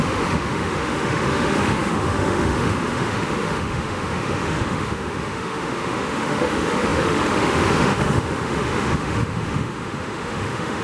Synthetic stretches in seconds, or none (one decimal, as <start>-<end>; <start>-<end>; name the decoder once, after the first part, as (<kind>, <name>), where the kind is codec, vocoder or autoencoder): 0.0-10.8 (autoencoder, DAC-VAE)